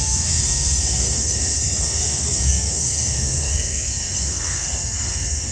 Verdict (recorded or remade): remade